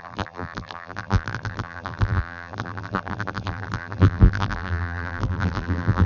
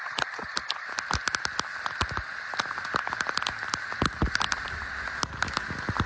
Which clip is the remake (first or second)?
first